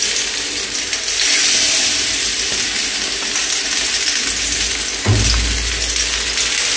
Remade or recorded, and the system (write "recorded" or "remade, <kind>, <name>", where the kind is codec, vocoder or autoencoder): recorded